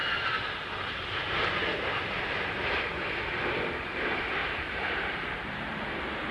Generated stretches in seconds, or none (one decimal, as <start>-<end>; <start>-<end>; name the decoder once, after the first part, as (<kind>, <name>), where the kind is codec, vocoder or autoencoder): 4.4-6.3 (vocoder, BigVGAN v2)